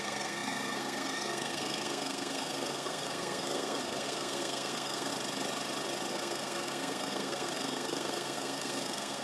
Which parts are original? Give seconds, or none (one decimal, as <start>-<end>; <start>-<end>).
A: 5.1-6.1